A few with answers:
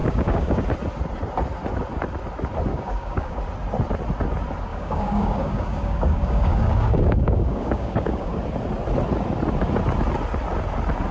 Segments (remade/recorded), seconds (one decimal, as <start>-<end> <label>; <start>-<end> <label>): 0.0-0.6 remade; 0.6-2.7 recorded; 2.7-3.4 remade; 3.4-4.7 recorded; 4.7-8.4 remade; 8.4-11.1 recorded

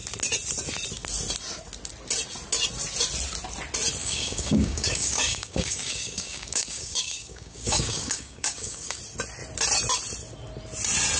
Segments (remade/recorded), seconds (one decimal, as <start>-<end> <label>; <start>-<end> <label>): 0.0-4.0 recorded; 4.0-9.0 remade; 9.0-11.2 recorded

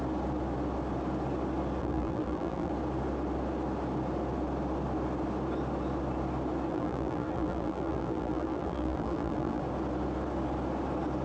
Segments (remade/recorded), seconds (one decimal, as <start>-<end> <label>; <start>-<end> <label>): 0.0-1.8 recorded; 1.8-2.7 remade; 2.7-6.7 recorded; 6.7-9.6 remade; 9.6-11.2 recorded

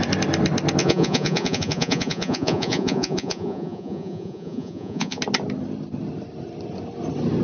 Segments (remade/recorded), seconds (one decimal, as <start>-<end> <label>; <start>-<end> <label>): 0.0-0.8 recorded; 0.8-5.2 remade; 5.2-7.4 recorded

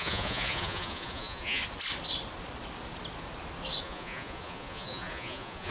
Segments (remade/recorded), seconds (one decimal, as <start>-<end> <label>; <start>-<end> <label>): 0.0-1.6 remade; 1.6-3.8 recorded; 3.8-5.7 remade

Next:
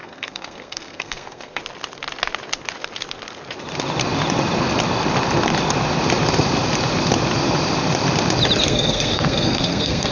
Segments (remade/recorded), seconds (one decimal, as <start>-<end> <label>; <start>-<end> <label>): 0.0-1.6 remade; 1.6-8.6 recorded; 8.6-10.1 remade

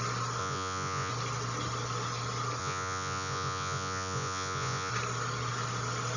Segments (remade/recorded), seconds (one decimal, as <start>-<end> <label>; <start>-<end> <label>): 0.0-0.4 recorded; 0.4-1.1 remade; 1.1-2.6 recorded; 2.6-4.9 remade; 4.9-6.2 recorded

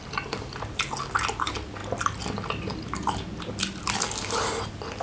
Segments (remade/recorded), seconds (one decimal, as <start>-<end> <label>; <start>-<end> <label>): 0.0-5.0 recorded